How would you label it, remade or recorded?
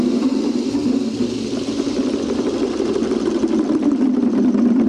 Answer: recorded